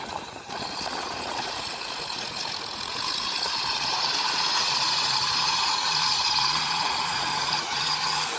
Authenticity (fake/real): fake